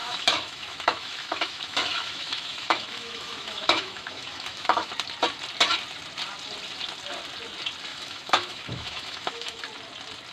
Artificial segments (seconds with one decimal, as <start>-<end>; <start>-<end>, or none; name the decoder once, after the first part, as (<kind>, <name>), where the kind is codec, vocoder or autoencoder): 0.0-4.9 (autoencoder, DAC-VAE); 7.9-9.6